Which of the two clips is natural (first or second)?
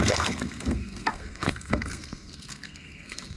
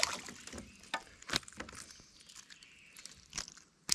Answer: second